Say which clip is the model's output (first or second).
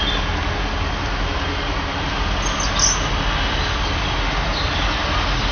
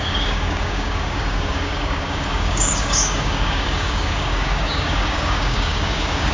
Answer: second